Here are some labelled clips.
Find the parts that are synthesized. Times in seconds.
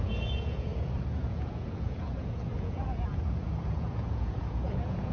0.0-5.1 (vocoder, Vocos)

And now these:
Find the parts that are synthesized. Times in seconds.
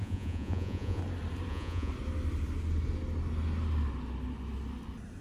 0.0-1.0 (vocoder, Vocos); 1.5-1.9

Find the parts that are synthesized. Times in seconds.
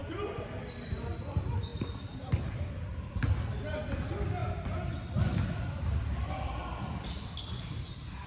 0.0-1.0 (vocoder, BigVGAN v2); 1.7-2.5; 4.4-7.3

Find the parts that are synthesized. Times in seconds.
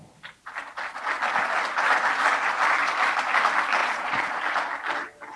3.8-4.4 (vocoder, Vocos)